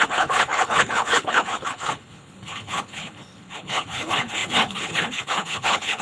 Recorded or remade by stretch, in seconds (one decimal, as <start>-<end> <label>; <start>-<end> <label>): 0.0-6.0 remade

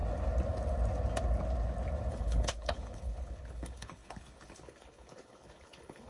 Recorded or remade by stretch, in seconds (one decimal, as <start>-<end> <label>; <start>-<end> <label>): 0.0-2.1 recorded; 2.1-6.1 remade

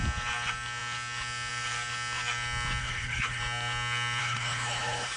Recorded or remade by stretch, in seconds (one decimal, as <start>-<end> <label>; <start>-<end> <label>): 0.0-2.8 recorded; 2.8-3.4 remade; 3.4-4.2 recorded; 4.2-5.2 remade

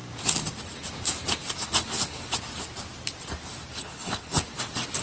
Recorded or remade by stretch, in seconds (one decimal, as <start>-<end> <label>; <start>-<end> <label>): 0.0-3.8 recorded; 3.8-4.4 remade; 4.4-5.0 recorded

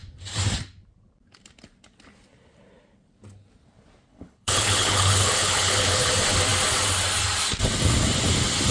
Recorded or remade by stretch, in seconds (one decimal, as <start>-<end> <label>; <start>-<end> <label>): 0.0-4.1 recorded; 4.1-6.1 remade; 6.1-8.7 recorded

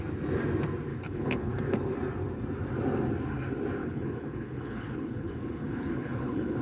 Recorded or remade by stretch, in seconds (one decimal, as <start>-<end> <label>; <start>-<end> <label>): 0.0-0.9 recorded; 0.9-1.5 remade; 1.5-3.8 recorded; 3.8-6.6 remade